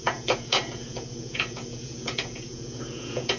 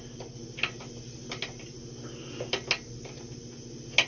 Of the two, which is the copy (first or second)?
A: first